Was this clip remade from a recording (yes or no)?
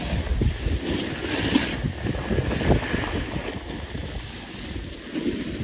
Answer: no